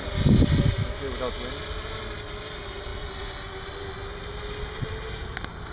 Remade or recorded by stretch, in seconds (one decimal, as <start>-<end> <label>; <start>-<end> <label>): 0.0-5.7 recorded